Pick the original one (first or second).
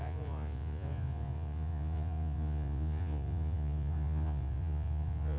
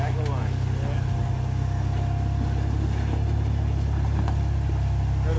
second